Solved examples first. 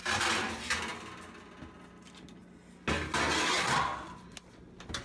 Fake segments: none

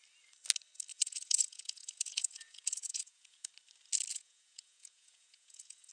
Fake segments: 0.9-3.5 (vocoder, Vocos); 4.1-5.9

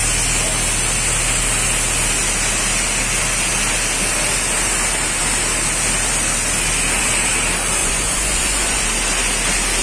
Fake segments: 7.8-8.8 (vocoder, Vocos)

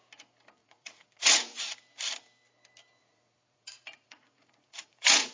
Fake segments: 0.6-1.6 (vocoder, Vocos); 3.0-5.3

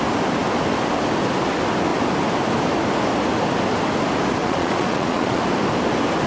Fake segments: 4.4-5.4 (vocoder, Vocos)

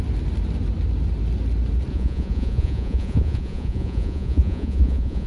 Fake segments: 1.9-5.3 (vocoder, Vocos)